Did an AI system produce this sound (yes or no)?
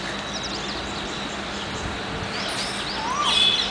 no